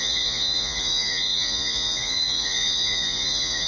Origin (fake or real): fake